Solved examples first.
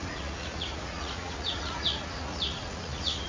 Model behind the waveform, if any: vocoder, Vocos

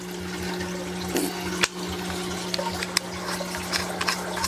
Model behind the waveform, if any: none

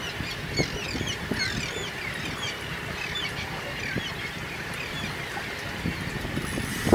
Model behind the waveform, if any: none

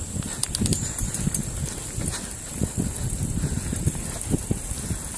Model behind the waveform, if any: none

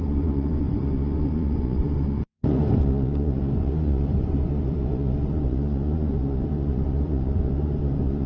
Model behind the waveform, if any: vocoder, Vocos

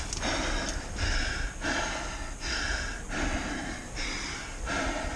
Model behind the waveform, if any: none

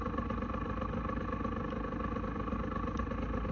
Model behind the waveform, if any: none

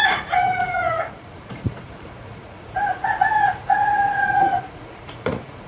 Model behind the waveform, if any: vocoder, Vocos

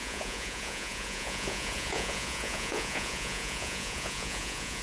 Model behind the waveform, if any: vocoder, Vocos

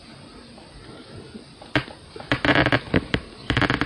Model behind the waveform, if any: none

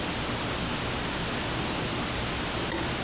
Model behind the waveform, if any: none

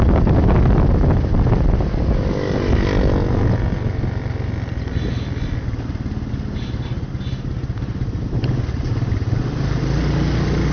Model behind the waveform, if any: none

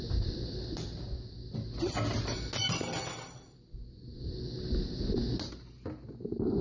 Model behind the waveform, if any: none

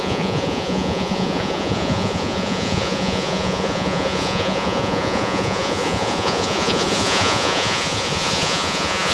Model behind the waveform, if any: vocoder, Vocos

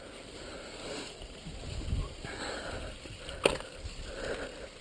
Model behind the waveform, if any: none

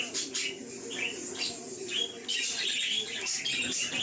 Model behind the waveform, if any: none